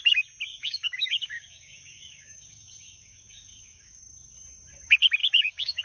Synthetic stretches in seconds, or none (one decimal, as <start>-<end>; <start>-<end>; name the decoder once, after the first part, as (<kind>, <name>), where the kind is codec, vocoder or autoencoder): 0.5-4.0 (codec, DAC); 5.2-5.8